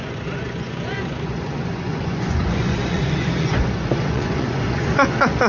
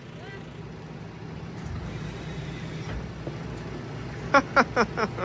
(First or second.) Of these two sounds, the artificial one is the first